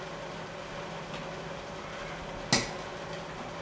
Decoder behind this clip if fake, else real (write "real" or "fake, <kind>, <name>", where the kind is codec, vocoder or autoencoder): real